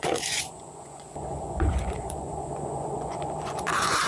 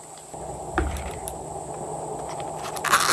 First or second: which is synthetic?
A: first